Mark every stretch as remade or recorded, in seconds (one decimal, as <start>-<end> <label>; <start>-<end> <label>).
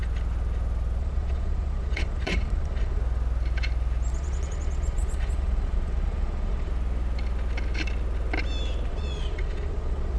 0.0-1.0 recorded; 1.0-3.0 remade; 3.0-4.1 recorded; 4.1-6.7 remade; 6.7-8.9 recorded; 8.9-10.2 remade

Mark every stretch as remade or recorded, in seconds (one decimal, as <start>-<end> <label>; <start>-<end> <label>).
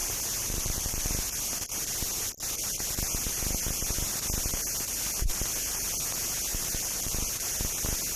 0.0-1.1 remade; 1.1-6.5 recorded; 6.5-7.5 remade; 7.5-8.2 recorded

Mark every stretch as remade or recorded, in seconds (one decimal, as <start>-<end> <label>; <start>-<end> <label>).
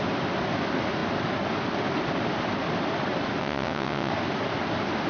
0.0-3.4 recorded; 3.4-4.1 remade; 4.1-5.1 recorded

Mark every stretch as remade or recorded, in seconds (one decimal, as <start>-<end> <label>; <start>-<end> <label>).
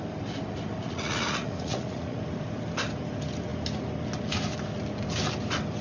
0.0-0.8 recorded; 0.8-2.2 remade; 2.2-5.8 recorded